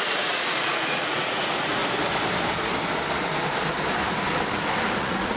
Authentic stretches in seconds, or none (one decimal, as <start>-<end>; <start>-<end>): 1.8-5.0